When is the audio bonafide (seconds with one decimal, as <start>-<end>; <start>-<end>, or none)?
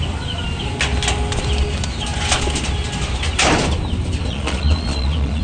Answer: 0.0-4.3